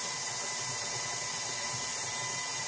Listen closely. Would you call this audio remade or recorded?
recorded